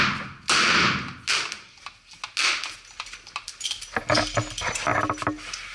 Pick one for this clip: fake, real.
real